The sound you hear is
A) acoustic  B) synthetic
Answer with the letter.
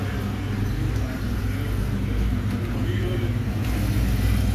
A